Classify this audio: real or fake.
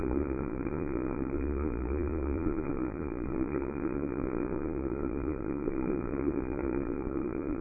fake